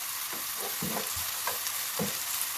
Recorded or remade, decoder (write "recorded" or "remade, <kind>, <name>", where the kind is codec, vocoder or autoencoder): remade, vocoder, BigVGAN v2